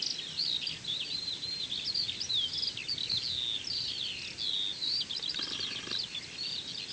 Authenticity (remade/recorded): recorded